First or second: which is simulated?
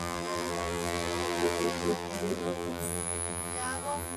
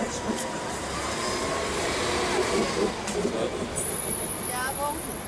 first